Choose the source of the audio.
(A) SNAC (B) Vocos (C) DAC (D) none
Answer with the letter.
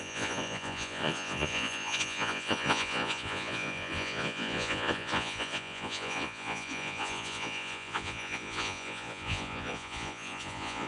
B